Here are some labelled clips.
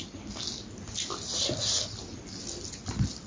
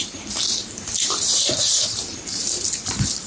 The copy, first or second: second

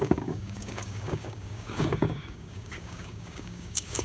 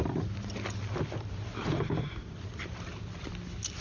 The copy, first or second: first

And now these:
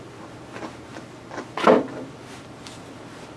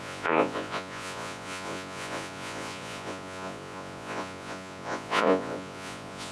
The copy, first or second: second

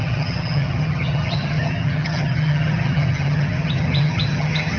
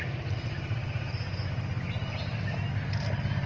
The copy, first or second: first